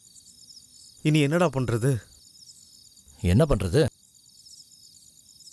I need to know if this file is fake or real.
real